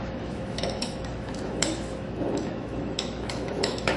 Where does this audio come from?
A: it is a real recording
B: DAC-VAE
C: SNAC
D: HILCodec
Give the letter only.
B